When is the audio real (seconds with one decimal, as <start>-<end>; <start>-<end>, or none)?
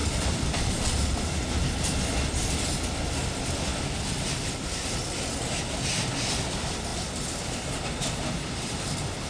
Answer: 0.7-3.7; 4.5-6.9